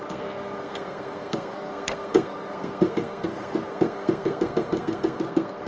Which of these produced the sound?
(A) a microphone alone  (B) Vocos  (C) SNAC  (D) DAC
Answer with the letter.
C